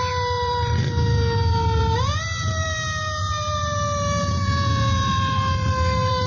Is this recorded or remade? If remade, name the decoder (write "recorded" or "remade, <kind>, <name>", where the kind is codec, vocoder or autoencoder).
remade, vocoder, BigVGAN v2